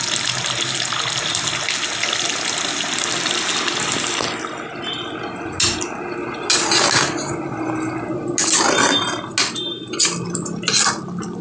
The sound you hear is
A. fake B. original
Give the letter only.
B